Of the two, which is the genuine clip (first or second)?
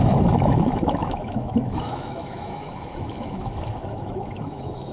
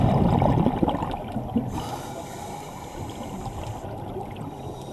second